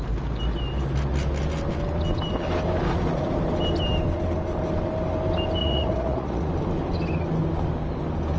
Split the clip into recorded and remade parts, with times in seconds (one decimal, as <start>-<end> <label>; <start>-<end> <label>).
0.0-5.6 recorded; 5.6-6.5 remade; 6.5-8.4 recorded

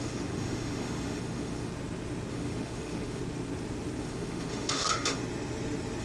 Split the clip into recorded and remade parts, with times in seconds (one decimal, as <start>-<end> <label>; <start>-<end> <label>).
0.0-1.7 remade; 1.7-2.3 recorded; 2.3-3.2 remade; 3.2-4.0 recorded; 4.0-5.2 remade; 5.2-6.0 recorded

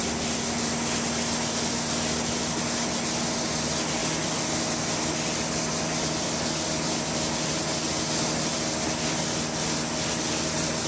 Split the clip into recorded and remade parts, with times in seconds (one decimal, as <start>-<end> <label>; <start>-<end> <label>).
0.0-10.9 recorded

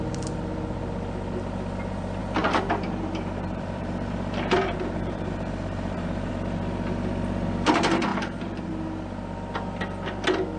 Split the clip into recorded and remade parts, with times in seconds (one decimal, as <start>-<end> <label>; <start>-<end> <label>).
0.0-2.2 recorded; 2.2-6.3 remade; 6.3-8.1 recorded; 8.1-8.7 remade; 8.7-10.6 recorded

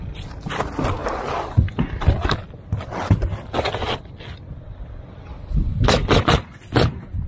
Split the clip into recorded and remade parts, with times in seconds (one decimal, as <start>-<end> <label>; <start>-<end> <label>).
0.0-7.3 recorded